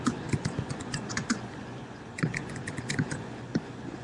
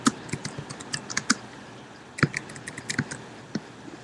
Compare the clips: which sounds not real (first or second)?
first